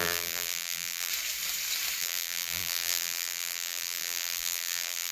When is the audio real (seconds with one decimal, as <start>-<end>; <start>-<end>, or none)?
1.1-2.0